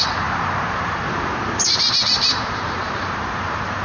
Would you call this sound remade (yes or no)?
yes